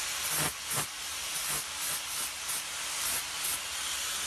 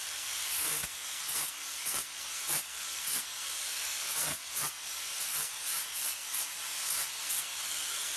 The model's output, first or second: second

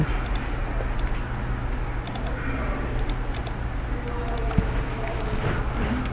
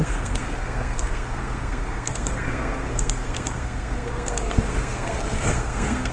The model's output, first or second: second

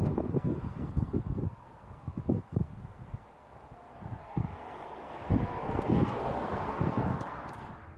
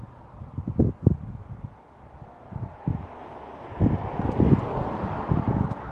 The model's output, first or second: first